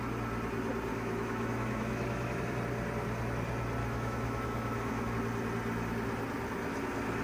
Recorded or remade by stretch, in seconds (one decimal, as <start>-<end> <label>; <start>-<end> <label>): 0.0-0.9 recorded; 0.9-2.4 remade; 2.4-3.8 recorded; 3.8-5.1 remade; 5.1-7.2 recorded